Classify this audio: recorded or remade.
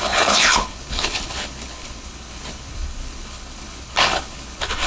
remade